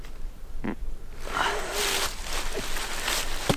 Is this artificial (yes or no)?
no